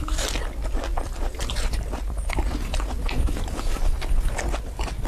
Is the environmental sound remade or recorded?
recorded